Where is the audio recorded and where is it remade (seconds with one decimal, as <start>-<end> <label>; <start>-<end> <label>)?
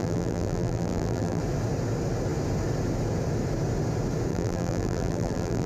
0.0-1.4 remade; 1.4-4.3 recorded; 4.3-5.7 remade